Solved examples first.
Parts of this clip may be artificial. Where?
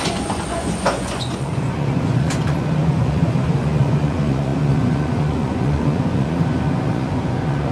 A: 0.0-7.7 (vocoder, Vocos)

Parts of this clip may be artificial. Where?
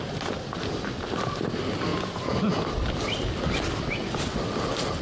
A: 1.9-2.6 (vocoder, Vocos)